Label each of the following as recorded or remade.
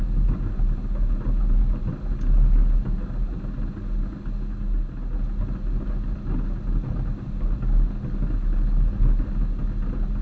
recorded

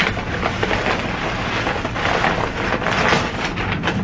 recorded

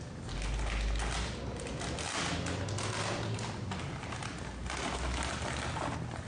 recorded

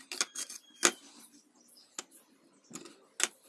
recorded